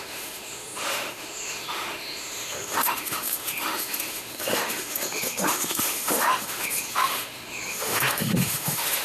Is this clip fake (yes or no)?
yes